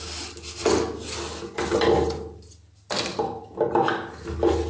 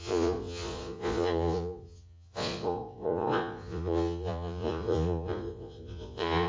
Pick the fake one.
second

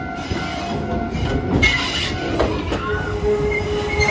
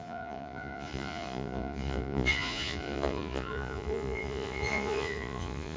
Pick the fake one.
second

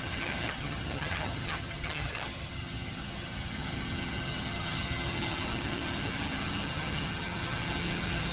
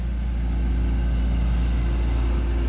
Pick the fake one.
first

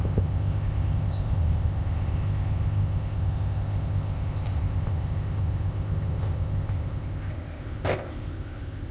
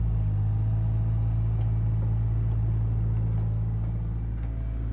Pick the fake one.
first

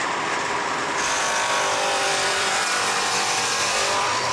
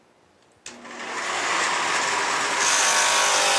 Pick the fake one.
first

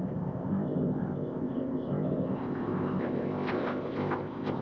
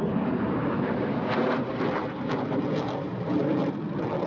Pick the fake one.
first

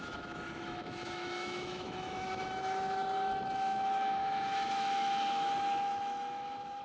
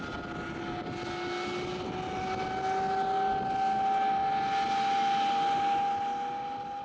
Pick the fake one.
first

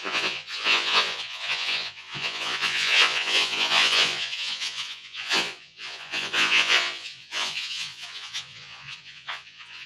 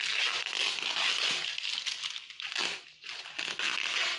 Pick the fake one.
first